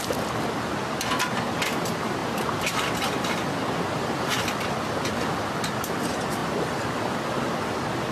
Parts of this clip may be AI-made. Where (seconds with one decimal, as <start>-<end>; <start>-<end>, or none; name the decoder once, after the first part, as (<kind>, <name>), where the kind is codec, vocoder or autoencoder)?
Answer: none